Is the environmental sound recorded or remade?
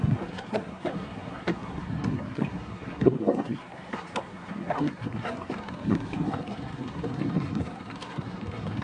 remade